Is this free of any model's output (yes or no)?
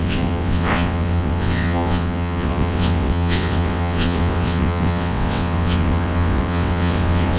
no